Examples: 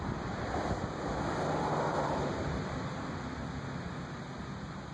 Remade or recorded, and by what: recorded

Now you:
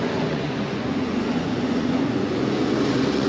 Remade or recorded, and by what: remade, vocoder, Vocos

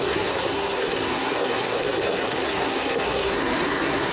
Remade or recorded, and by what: remade, codec, SNAC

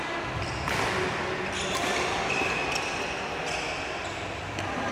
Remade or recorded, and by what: recorded